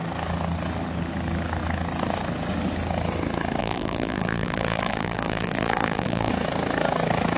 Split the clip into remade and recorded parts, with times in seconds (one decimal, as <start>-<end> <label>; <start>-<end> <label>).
0.0-3.6 recorded; 3.6-6.3 remade; 6.3-7.4 recorded